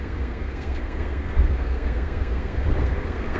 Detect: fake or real fake